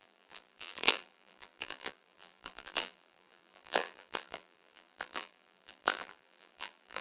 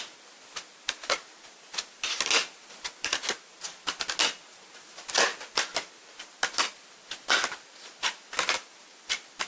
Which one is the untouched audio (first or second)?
second